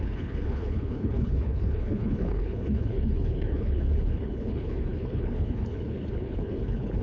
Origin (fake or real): fake